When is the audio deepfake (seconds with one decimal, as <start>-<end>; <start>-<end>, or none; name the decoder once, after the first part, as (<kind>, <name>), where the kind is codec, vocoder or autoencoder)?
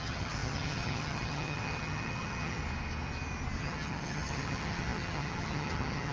0.0-2.6 (vocoder, HiFi-GAN); 3.6-6.1